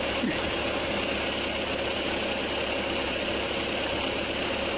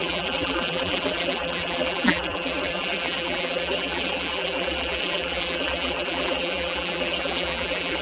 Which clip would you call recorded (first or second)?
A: first